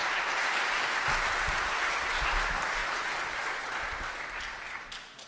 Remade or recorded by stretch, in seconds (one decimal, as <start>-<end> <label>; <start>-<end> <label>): 0.0-0.8 remade; 0.8-2.8 recorded; 2.8-3.6 remade; 3.6-5.3 recorded